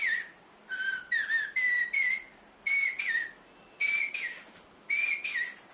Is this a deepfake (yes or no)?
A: no